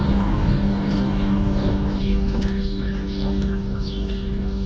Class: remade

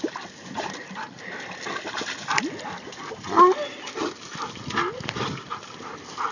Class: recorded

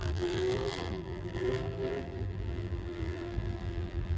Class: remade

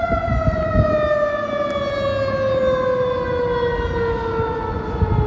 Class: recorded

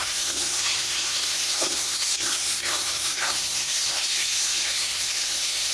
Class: remade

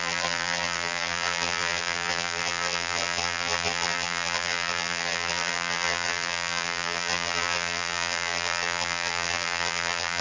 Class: remade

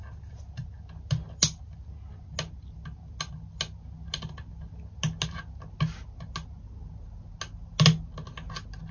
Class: recorded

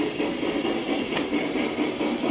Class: recorded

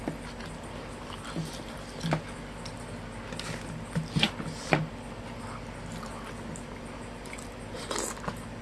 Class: recorded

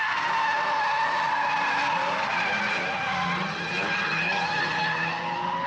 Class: recorded